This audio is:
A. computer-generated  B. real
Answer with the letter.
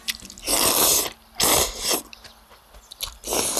B